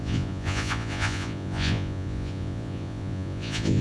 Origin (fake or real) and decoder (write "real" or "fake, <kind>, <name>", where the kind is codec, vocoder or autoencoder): fake, vocoder, Vocos